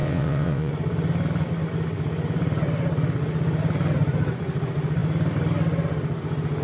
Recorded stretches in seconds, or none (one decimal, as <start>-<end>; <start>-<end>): 0.7-6.6